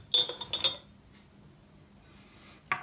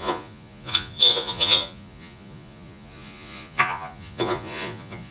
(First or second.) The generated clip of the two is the second